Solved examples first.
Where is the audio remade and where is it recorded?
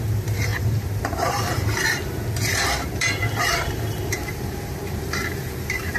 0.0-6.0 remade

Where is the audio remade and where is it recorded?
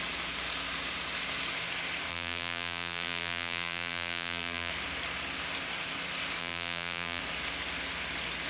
0.0-2.1 recorded; 2.1-4.7 remade; 4.7-6.4 recorded; 6.4-7.2 remade; 7.2-8.5 recorded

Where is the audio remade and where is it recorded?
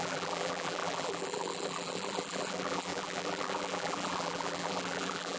0.0-5.4 remade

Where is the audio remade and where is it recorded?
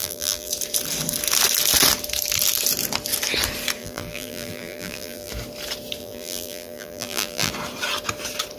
0.0-0.5 remade; 0.5-3.8 recorded; 3.8-5.3 remade; 5.3-6.0 recorded; 6.0-7.5 remade; 7.5-8.6 recorded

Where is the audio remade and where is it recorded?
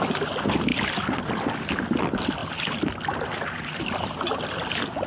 0.0-5.1 recorded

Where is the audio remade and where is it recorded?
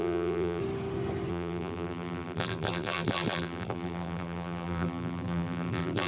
0.0-0.6 remade; 0.6-1.3 recorded; 1.3-6.1 remade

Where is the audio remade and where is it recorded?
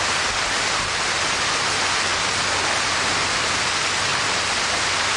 0.0-4.1 recorded; 4.1-4.8 remade; 4.8-5.2 recorded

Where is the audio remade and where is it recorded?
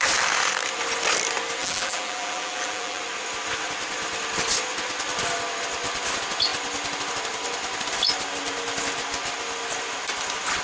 0.0-1.6 recorded; 1.6-3.0 remade; 3.0-10.6 recorded